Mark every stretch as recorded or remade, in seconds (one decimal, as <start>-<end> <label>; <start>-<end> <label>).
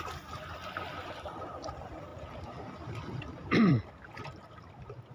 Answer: 0.0-2.1 remade; 2.1-3.2 recorded; 3.2-3.7 remade; 3.7-5.1 recorded